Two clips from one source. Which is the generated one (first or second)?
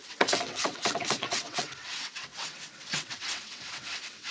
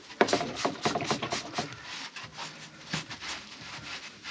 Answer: first